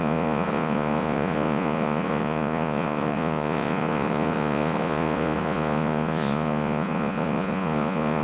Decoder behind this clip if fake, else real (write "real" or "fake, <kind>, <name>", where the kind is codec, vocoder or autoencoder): fake, vocoder, Vocos